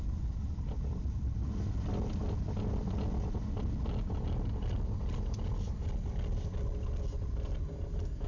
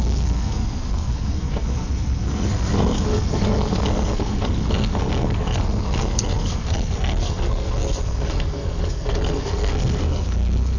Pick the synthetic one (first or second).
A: second